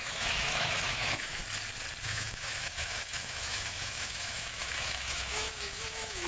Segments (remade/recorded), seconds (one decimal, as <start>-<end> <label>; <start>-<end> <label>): 0.0-1.4 remade; 1.4-2.0 recorded; 2.0-6.3 remade

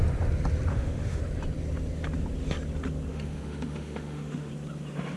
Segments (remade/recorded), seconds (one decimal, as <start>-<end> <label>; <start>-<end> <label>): 0.0-0.7 recorded; 0.7-1.2 remade; 1.2-3.1 recorded; 3.1-4.5 remade; 4.5-5.2 recorded

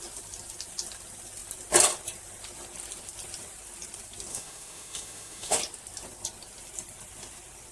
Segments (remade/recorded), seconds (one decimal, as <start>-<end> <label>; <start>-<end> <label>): 0.0-4.3 recorded; 4.3-5.6 remade; 5.6-7.7 recorded